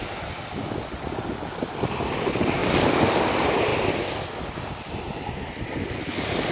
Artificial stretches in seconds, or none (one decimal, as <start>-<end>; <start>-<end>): none